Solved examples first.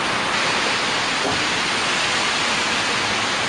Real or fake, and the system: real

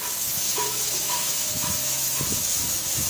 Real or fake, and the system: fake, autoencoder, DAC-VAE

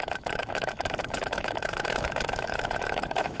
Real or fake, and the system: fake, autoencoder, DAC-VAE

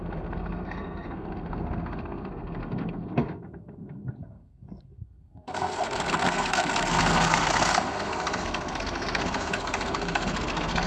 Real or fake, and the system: fake, codec, SNAC